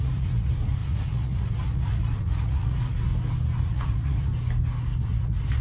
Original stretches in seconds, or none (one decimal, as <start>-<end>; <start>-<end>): 3.1-3.6; 4.3-5.0